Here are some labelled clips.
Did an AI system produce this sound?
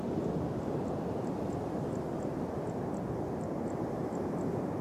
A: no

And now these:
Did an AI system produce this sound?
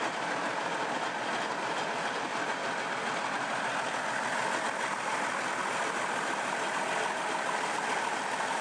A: no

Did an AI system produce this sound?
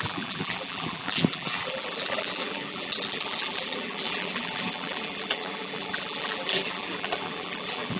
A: yes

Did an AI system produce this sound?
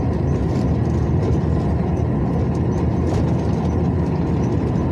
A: no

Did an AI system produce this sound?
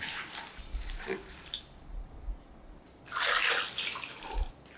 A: no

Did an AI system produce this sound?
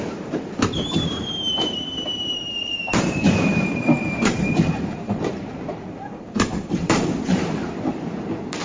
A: yes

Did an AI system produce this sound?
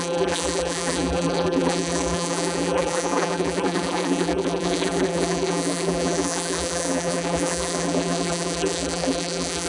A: yes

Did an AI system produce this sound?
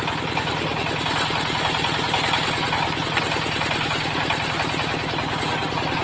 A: no